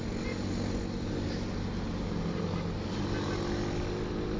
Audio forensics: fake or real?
real